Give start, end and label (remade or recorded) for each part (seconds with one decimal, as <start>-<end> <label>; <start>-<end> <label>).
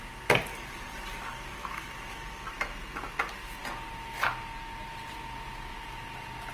0.0-0.5 recorded; 0.5-2.5 remade; 2.5-6.5 recorded